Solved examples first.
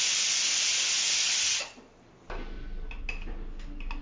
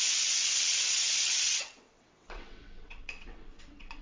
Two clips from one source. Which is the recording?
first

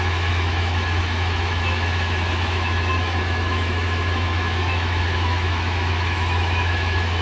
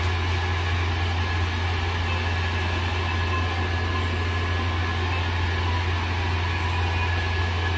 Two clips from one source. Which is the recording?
second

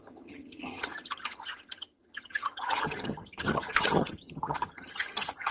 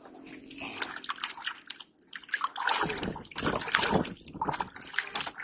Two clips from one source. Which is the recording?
second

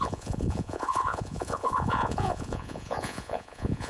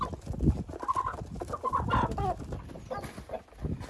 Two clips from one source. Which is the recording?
second